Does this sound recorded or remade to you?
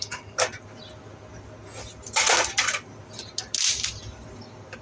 recorded